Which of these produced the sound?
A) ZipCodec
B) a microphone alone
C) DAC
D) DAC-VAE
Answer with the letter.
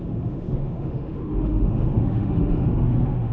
D